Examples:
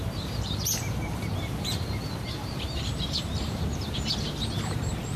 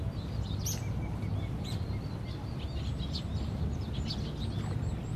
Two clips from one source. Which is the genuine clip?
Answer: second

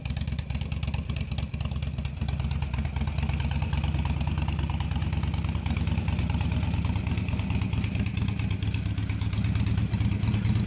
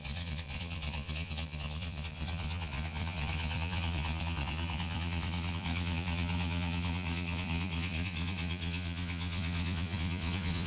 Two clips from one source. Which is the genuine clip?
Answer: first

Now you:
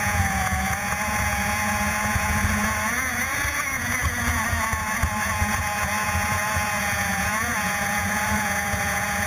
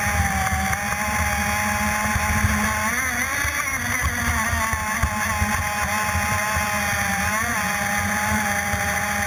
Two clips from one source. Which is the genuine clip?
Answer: second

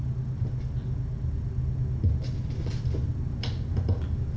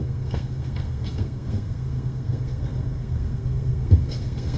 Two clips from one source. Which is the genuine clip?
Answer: first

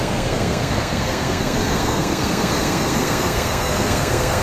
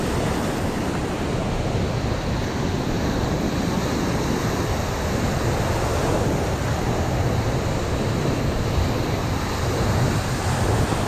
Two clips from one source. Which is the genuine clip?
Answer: second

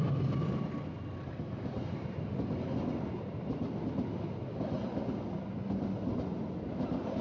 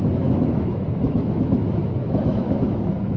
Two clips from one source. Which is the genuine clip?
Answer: first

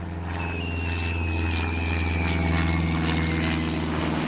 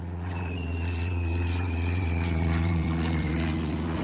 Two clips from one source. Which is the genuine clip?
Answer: first